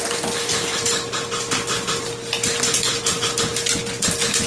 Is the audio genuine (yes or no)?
yes